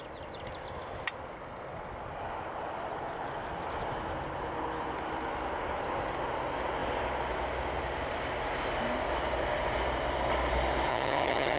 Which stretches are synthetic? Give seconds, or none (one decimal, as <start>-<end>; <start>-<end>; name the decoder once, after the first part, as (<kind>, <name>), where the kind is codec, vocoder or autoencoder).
10.9-11.6 (vocoder, HiFi-GAN)